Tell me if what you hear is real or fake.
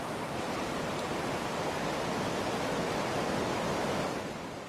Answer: real